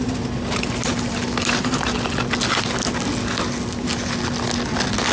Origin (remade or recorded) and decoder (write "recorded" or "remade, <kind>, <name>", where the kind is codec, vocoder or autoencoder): recorded